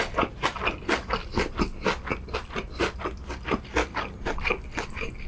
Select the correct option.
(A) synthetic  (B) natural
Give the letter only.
B